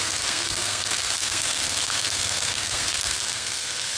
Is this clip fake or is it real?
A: fake